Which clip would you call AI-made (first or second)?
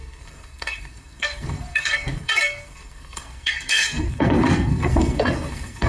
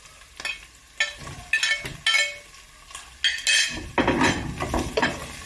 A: first